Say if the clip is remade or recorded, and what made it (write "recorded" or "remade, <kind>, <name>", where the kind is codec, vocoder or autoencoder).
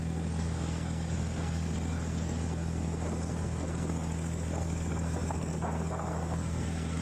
remade, codec, SNAC